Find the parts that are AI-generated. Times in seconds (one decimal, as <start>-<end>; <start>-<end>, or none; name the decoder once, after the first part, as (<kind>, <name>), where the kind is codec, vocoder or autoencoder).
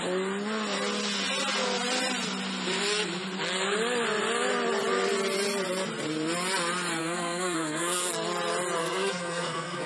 7.0-8.1 (codec, SNAC); 8.8-9.9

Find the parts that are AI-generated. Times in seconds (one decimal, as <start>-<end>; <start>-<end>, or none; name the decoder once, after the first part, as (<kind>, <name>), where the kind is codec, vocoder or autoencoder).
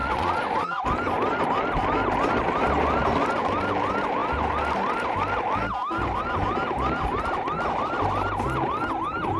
0.0-0.8 (vocoder, Vocos)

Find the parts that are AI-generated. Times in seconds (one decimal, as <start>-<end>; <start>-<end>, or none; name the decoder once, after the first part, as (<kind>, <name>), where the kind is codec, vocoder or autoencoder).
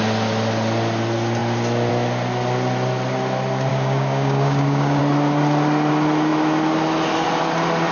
3.7-5.0 (codec, DAC)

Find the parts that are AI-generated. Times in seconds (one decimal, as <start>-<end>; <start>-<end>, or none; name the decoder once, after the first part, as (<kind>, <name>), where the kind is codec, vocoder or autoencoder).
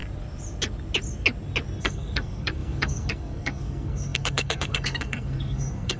1.8-6.0 (codec, SNAC)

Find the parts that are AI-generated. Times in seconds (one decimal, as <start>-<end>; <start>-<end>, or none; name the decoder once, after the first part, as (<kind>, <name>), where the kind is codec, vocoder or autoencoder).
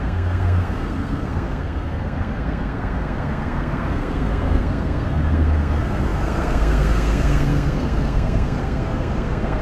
0.0-9.6 (codec, SNAC)